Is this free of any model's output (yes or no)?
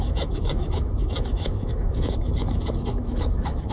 no